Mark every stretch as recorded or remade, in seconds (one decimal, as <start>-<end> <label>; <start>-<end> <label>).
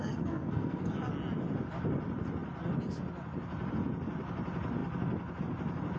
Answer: 0.0-0.9 remade; 0.9-6.0 recorded